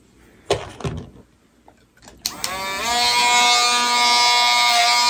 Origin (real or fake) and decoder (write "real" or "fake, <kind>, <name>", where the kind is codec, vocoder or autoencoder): real